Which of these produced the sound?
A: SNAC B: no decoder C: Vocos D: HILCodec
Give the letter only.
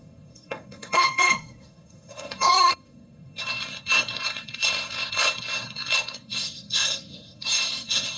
A